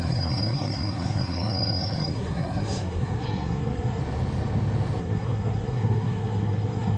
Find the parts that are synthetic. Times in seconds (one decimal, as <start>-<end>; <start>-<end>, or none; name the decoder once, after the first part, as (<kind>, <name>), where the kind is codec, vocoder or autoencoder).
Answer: 0.0-4.0 (codec, SNAC); 5.0-7.0